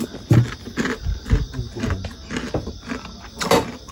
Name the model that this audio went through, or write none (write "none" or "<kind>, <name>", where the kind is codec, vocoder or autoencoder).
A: none